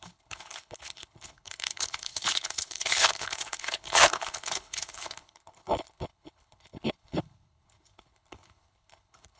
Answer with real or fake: fake